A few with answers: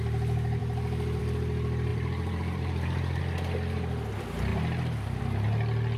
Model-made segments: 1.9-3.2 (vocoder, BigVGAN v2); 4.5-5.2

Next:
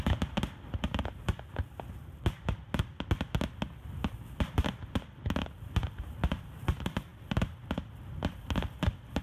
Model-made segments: none

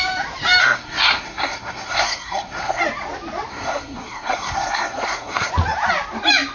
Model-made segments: 0.6-2.8 (codec, SNAC); 3.5-5.5